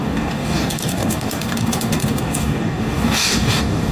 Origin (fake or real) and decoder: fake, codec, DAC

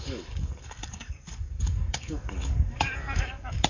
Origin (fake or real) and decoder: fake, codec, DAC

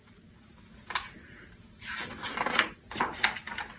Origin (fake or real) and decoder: real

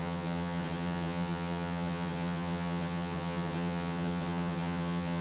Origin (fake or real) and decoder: fake, vocoder, HiFi-GAN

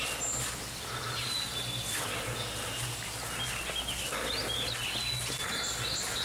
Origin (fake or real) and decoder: real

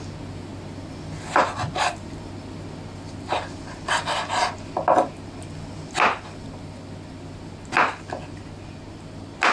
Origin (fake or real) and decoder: real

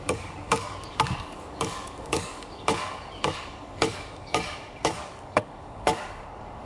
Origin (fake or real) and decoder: fake, codec, DAC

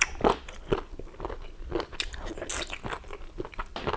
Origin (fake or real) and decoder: real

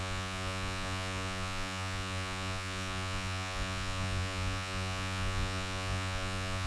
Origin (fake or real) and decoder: fake, vocoder, Vocos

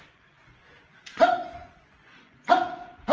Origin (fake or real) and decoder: fake, vocoder, Vocos